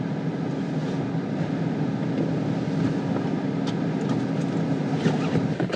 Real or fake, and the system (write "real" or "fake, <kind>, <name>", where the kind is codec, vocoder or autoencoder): real